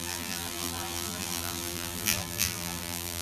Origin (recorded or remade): remade